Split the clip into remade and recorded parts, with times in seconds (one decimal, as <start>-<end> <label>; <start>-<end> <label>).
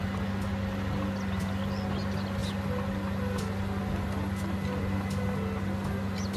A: 0.0-6.4 recorded